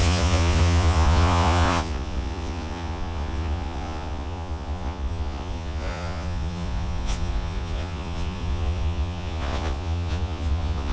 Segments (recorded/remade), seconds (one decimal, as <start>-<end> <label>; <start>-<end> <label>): 0.0-10.9 remade